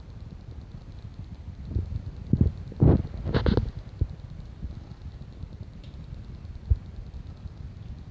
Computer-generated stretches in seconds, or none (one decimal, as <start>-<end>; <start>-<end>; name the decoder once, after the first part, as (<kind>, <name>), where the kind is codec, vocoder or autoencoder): none